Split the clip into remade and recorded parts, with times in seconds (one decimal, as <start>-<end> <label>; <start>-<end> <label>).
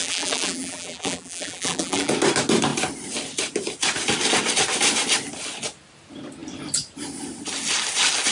0.0-2.1 remade; 2.1-8.3 recorded